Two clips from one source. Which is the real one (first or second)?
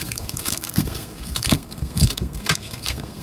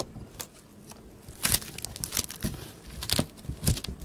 second